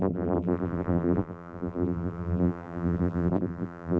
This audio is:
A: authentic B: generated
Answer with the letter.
B